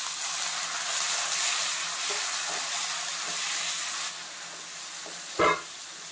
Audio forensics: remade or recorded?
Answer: recorded